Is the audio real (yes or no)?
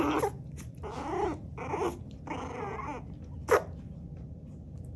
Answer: yes